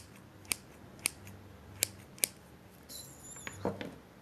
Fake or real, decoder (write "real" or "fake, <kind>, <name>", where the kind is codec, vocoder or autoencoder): real